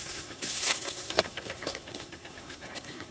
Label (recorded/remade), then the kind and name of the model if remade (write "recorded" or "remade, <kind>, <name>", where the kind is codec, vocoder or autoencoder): remade, codec, SNAC